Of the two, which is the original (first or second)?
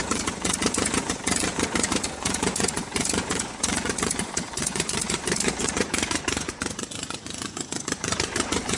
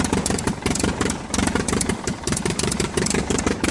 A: second